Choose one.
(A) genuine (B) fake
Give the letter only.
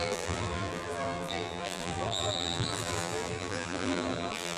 B